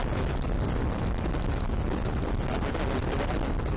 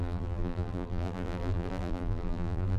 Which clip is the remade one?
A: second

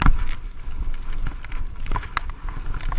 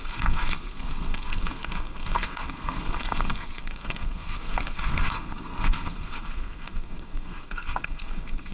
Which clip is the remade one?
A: second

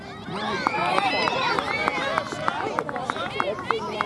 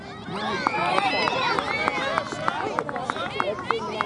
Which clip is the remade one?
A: first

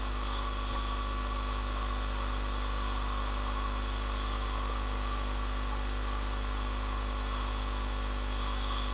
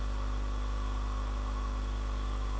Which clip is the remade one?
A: second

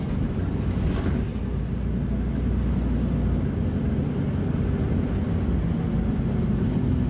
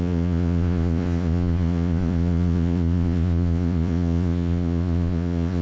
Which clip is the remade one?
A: second